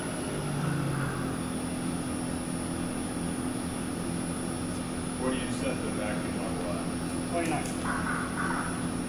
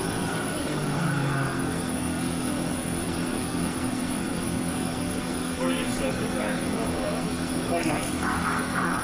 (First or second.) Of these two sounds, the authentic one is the first